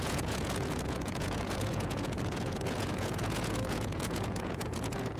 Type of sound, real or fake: fake